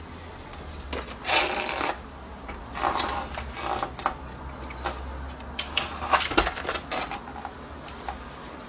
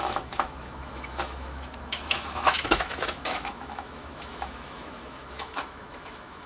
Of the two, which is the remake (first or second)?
second